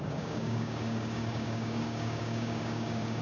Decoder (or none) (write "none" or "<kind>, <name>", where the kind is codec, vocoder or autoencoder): codec, DAC